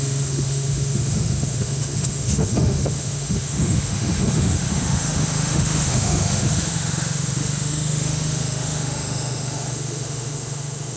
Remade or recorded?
remade